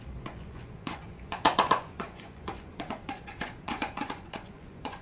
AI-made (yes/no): yes